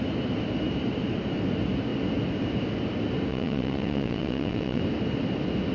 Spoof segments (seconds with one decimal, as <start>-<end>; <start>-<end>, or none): 3.3-4.8